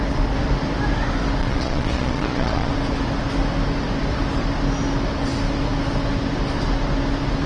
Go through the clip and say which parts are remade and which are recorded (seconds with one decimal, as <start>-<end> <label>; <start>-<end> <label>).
0.0-1.4 recorded; 1.4-2.7 remade; 2.7-7.5 recorded